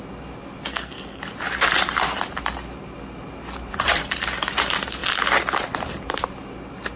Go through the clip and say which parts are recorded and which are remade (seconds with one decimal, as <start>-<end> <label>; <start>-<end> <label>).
0.0-0.7 recorded; 0.7-1.2 remade; 1.2-7.0 recorded